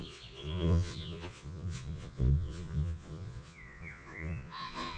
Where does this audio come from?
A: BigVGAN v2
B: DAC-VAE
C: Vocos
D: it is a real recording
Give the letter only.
C